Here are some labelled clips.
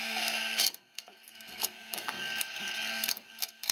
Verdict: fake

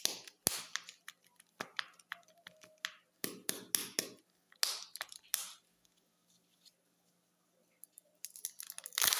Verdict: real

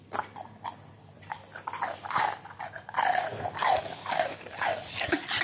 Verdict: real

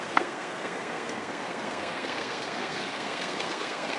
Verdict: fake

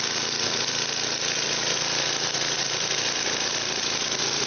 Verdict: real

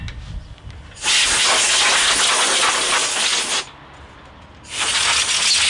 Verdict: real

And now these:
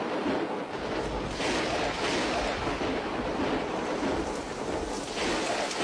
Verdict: real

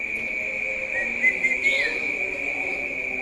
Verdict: real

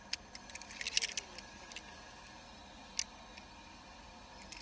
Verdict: real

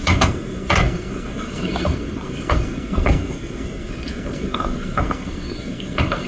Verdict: fake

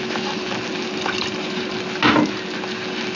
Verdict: real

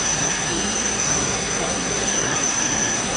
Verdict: fake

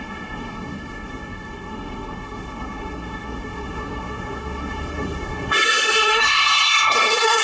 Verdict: fake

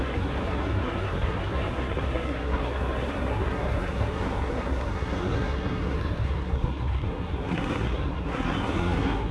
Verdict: fake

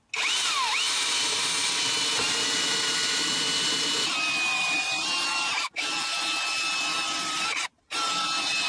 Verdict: real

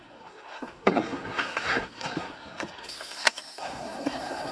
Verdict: fake